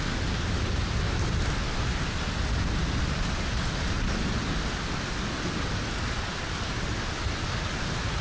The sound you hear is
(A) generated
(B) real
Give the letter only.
B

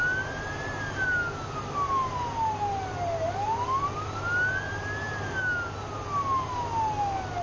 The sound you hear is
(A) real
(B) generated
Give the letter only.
A